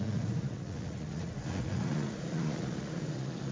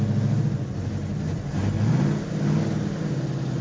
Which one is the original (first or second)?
second